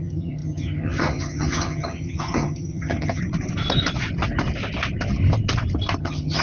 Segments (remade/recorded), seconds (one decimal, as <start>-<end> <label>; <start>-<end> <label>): 0.0-3.2 remade; 3.2-6.0 recorded; 6.0-6.4 remade